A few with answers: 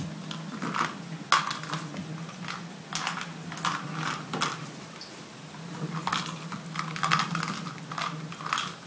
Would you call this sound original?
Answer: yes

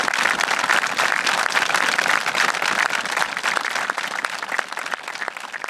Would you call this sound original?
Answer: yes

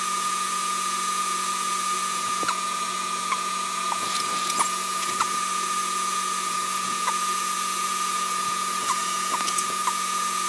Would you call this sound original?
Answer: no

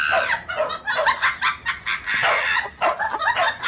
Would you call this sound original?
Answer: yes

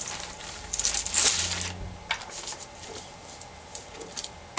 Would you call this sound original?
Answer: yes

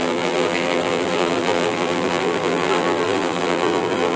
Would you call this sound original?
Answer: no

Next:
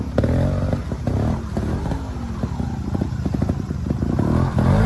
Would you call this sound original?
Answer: yes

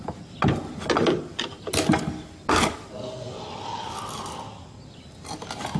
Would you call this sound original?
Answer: yes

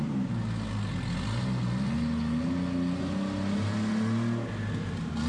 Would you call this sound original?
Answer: yes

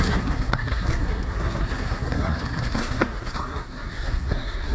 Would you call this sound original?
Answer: no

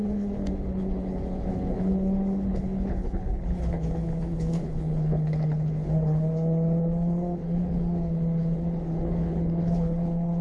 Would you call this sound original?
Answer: no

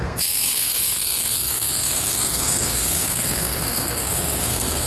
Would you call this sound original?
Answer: no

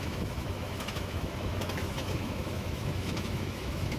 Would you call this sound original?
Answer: no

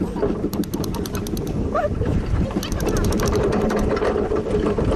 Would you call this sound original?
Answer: no